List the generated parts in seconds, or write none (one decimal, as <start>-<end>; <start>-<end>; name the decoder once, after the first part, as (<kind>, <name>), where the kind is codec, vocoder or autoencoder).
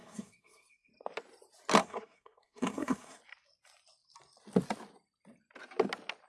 0.0-0.9 (codec, SNAC); 1.8-3.2